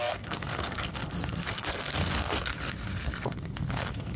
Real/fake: fake